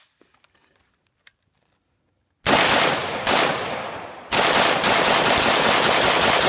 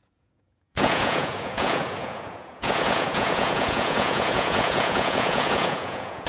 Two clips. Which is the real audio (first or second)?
first